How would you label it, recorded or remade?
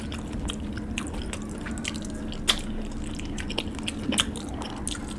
recorded